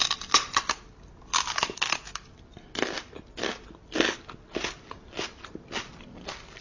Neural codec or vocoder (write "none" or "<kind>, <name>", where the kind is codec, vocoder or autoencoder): none